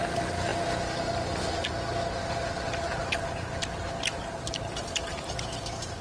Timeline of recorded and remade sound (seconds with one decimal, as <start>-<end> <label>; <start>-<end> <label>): 0.0-3.0 recorded; 3.0-4.5 remade; 4.5-6.0 recorded